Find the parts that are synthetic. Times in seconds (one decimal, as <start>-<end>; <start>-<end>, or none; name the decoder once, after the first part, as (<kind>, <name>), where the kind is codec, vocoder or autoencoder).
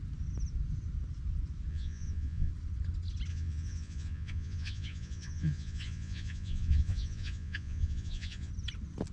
1.7-2.5 (vocoder, Vocos); 3.3-8.5